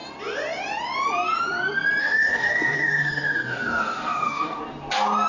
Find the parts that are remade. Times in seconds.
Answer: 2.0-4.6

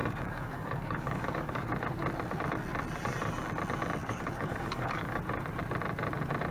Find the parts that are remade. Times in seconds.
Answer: 0.0-1.7; 4.0-5.2

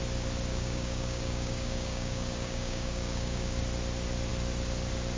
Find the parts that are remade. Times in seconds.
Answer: 0.5-3.6